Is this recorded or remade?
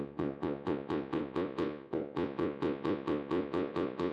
remade